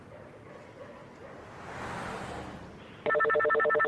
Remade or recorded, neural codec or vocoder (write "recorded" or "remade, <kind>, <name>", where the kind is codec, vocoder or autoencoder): recorded